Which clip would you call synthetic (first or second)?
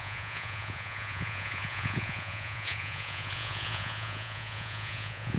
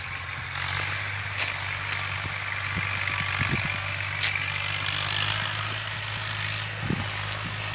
first